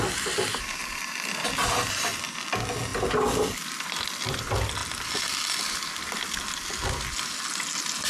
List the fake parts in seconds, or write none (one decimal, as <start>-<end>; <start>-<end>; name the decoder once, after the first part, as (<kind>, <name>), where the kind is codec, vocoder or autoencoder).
none